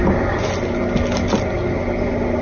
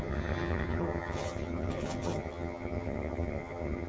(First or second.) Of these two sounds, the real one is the first